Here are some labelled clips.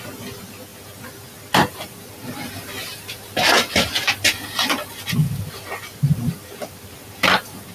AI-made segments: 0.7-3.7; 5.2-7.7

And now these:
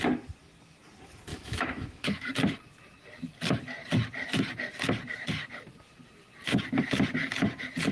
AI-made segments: 1.3-2.3

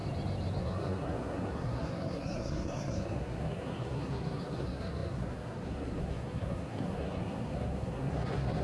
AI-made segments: 0.6-8.6

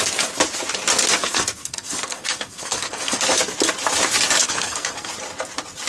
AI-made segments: 1.2-3.2; 4.4-5.1

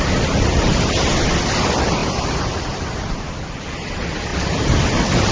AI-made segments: 2.0-3.2; 4.3-5.3

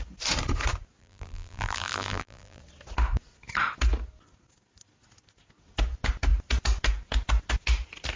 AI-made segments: 1.0-2.6

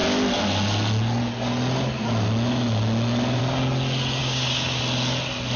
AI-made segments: 4.2-4.8

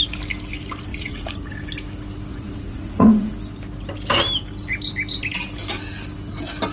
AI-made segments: 0.9-1.5; 2.3-3.3